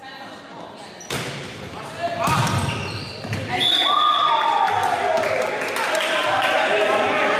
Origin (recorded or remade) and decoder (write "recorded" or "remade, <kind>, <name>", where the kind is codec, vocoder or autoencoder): recorded